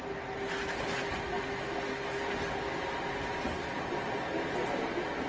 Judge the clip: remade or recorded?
recorded